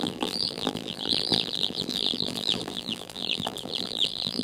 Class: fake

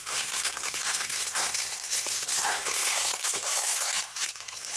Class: fake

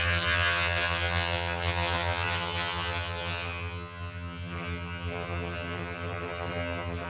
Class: fake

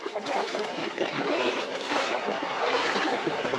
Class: fake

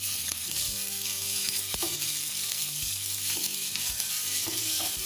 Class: fake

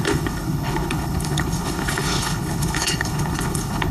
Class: fake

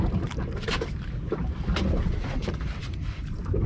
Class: fake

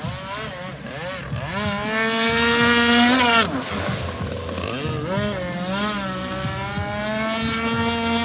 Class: real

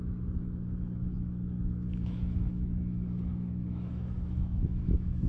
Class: fake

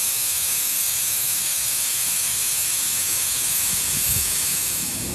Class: fake